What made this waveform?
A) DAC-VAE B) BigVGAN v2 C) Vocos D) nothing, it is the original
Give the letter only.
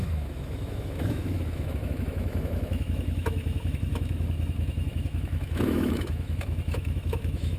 A